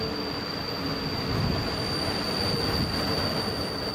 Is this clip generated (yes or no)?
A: no